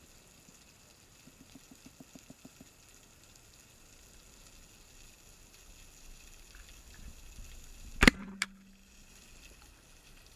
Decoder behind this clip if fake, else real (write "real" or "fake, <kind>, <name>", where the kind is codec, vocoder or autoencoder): real